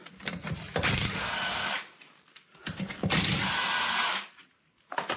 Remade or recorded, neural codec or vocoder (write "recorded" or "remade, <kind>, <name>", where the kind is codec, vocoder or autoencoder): remade, vocoder, BigVGAN v2